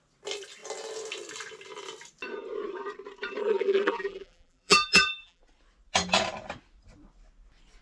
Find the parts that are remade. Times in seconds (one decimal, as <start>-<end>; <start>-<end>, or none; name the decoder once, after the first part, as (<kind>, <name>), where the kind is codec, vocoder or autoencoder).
3.4-5.4 (vocoder, BigVGAN v2)